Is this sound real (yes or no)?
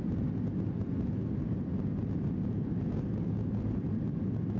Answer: yes